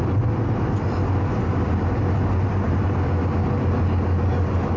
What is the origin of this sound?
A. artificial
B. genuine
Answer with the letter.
B